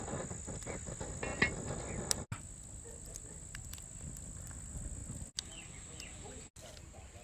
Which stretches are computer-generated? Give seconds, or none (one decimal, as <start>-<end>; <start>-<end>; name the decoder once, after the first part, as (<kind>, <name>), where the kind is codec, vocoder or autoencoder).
none